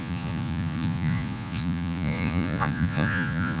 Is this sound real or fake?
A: fake